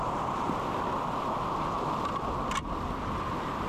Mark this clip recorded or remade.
recorded